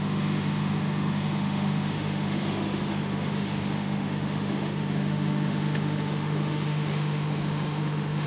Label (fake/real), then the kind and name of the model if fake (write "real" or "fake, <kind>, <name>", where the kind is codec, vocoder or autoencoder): fake, autoencoder, DAC-VAE